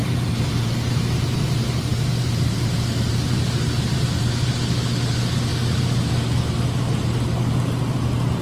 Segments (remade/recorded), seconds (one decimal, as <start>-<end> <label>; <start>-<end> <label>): 0.0-4.8 remade; 4.8-8.4 recorded